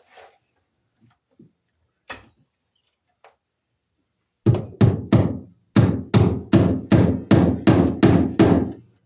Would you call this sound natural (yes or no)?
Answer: yes